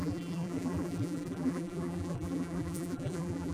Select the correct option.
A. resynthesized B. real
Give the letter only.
A